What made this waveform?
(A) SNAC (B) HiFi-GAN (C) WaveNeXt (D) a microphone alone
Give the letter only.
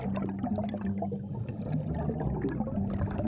D